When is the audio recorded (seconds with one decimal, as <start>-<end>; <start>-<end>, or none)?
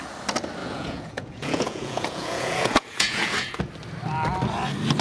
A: 0.0-0.6; 3.6-5.0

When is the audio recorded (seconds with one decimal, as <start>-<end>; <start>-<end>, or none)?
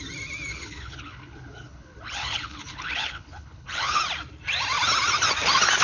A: 0.0-0.5; 4.0-5.8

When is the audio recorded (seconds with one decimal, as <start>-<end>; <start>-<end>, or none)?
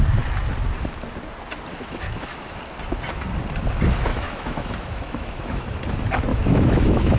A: 0.0-1.7; 2.6-4.1; 5.8-6.3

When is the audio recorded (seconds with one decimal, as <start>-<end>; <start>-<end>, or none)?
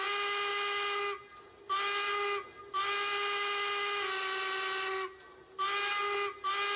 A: 0.0-6.8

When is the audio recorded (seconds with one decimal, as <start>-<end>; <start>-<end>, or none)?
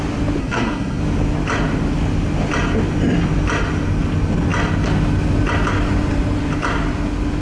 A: 0.0-0.4; 1.0-7.4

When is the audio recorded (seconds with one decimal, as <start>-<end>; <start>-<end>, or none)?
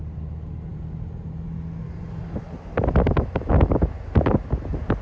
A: 0.0-5.0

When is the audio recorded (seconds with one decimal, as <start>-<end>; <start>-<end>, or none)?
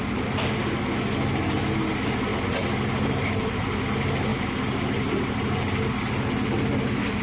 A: 0.0-7.2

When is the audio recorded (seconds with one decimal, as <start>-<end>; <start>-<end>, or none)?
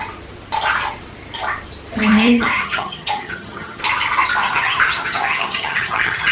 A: 0.0-2.1; 3.8-4.4